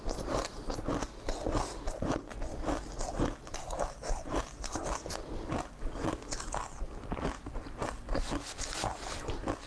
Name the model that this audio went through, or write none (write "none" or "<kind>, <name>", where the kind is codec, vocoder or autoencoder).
none